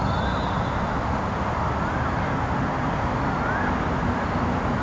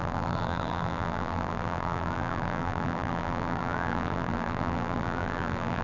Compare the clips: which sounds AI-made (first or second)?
second